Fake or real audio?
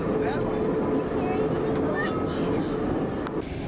real